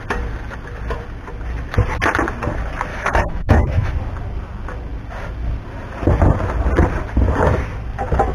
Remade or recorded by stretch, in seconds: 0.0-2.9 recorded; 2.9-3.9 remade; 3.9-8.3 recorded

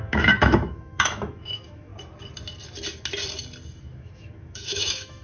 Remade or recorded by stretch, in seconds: 0.0-1.9 remade; 1.9-3.8 recorded; 3.8-5.2 remade